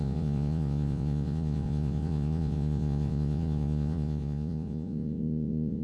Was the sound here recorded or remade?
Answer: remade